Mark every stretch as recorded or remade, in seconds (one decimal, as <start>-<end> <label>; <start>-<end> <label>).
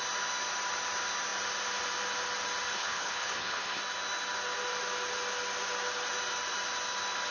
0.0-2.7 recorded; 2.7-3.8 remade; 3.8-7.3 recorded